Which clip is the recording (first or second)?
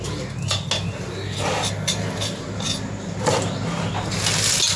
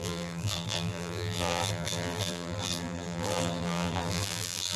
first